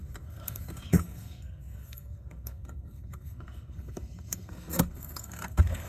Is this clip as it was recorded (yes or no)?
no